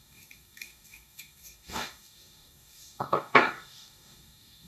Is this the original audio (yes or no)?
no